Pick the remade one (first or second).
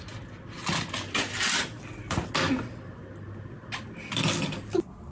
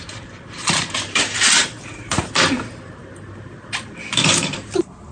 second